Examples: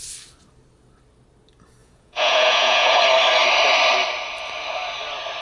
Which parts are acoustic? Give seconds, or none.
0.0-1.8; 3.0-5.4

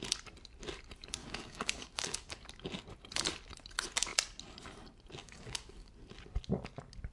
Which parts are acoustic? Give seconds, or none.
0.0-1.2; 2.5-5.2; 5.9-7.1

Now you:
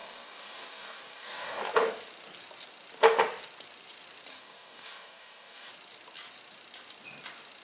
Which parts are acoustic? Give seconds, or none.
1.6-4.3; 5.7-7.6

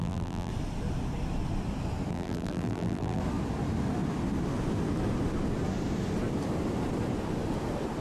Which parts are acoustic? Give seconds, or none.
0.5-2.1; 3.2-8.0

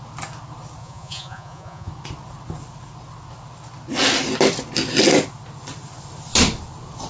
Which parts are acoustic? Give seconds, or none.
0.0-0.8; 1.9-7.1